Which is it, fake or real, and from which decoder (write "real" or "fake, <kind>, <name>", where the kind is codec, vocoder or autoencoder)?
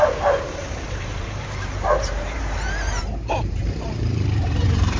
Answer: fake, vocoder, BigVGAN v2